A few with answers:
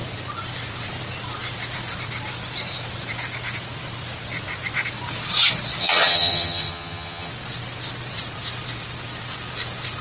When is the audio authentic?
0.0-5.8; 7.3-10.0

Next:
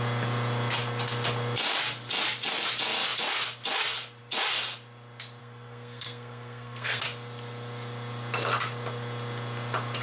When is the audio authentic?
0.0-5.4; 7.0-10.0

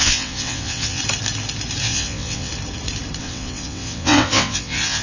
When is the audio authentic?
1.0-1.8; 2.5-3.2

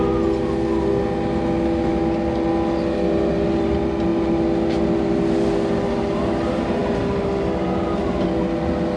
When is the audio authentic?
0.0-9.0